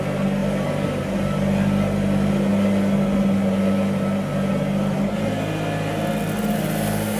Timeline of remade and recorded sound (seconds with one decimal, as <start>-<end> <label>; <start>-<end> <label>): 0.0-7.2 recorded